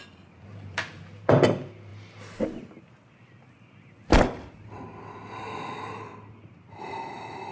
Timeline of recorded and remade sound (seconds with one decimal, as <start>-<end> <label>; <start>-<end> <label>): 0.0-0.5 recorded; 0.5-1.3 remade; 1.3-7.5 recorded

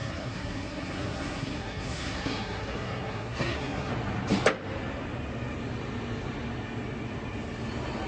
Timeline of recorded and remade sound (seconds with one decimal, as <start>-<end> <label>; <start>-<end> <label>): 0.0-3.9 remade; 3.9-8.1 recorded

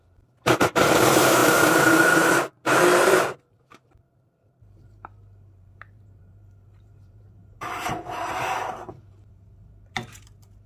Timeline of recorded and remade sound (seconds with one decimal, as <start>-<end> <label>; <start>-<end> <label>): 0.0-10.7 remade

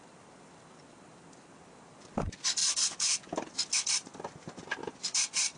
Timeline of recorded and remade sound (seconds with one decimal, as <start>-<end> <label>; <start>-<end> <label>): 0.0-2.6 remade; 2.6-3.2 recorded; 3.2-4.1 remade; 4.1-4.8 recorded; 4.8-5.6 remade

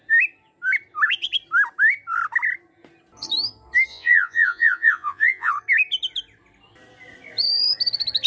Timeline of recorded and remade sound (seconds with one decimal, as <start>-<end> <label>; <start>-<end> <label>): 0.0-3.9 recorded; 3.9-5.5 remade; 5.5-8.3 recorded

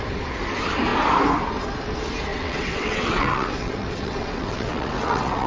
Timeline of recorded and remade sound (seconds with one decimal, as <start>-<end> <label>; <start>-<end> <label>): 0.0-2.3 recorded; 2.3-5.5 remade